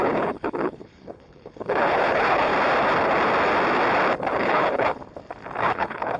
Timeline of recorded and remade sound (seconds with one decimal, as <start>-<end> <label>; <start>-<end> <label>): 0.0-2.5 remade; 2.5-4.3 recorded; 4.3-5.0 remade; 5.0-5.6 recorded; 5.6-6.2 remade